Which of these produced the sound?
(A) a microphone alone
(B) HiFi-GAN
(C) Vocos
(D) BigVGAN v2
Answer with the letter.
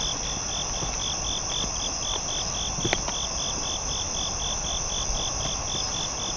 A